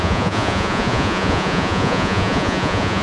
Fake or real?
fake